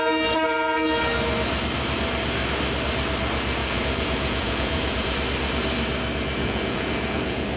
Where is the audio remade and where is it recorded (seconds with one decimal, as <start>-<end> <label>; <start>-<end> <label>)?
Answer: 0.0-3.6 recorded; 3.6-5.2 remade; 5.2-6.4 recorded; 6.4-7.6 remade